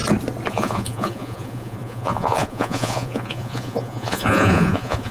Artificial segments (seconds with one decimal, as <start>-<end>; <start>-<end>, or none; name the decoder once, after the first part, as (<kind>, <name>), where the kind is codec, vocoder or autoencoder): 0.5-5.1 (vocoder, Vocos)